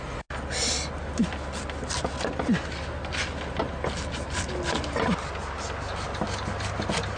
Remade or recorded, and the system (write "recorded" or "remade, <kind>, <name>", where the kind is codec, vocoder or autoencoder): recorded